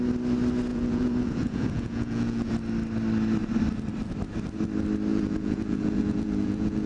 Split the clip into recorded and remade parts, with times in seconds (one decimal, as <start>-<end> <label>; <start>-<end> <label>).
0.0-0.7 recorded; 0.7-2.5 remade; 2.5-5.1 recorded; 5.1-6.9 remade

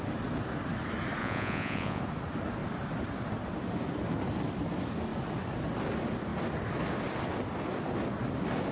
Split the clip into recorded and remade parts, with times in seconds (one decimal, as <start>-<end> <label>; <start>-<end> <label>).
0.0-1.2 recorded; 1.2-2.0 remade; 2.0-8.7 recorded